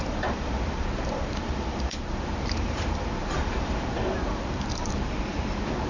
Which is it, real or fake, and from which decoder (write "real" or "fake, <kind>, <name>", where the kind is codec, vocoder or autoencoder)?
fake, vocoder, BigVGAN v2